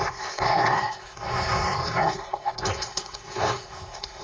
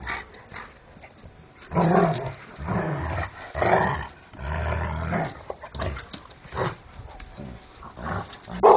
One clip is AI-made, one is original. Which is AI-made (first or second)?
first